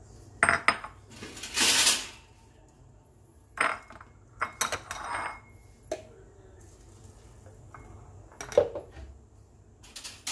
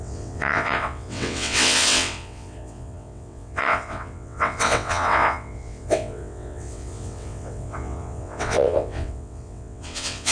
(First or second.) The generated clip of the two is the second